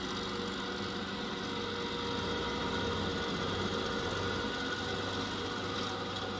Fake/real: real